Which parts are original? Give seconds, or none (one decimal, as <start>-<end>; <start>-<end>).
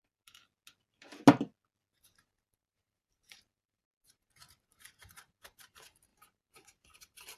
0.4-2.0